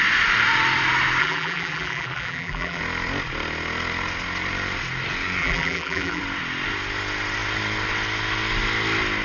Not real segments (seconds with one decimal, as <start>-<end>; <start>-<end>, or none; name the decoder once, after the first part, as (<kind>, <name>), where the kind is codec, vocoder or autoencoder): 1.2-2.8 (vocoder, BigVGAN v2); 5.4-6.2